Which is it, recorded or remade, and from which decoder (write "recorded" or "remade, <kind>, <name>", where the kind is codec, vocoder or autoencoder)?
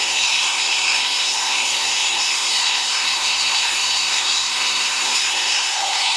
remade, codec, SNAC